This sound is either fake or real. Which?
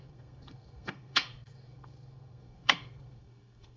fake